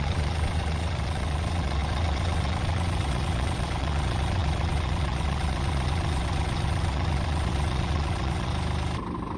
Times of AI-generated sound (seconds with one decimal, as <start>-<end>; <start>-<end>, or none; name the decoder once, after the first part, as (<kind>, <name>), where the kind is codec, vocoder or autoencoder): 0.0-8.5 (vocoder, WaveNeXt)